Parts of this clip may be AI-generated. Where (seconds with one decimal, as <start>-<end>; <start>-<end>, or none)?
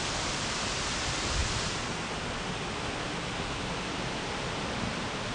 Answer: none